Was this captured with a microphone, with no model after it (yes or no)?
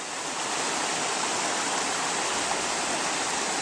yes